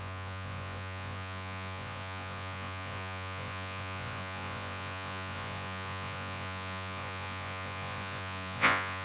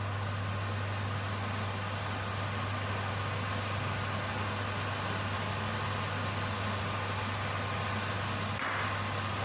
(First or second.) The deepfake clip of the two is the first